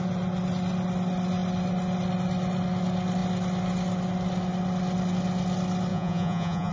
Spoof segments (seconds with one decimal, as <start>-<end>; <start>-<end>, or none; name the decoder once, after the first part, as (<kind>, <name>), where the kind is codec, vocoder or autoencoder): 5.9-6.7 (vocoder, Vocos)

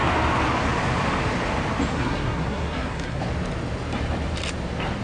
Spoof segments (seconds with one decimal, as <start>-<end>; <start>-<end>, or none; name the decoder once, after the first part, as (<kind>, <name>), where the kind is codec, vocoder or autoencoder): 1.9-3.2 (codec, SNAC)

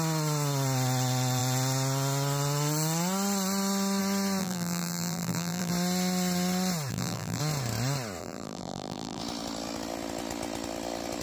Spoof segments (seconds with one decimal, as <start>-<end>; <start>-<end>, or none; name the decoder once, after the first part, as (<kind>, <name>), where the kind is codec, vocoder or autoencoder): 4.4-5.7 (vocoder, BigVGAN v2); 6.9-7.4; 8.2-9.2

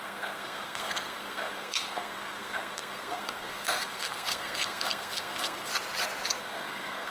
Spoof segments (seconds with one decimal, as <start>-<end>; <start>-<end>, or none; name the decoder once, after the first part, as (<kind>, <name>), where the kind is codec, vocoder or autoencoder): 0.0-5.7 (codec, SNAC); 6.4-7.1

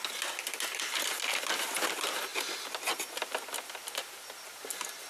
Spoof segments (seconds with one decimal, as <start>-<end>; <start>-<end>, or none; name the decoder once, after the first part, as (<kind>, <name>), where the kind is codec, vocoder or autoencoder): none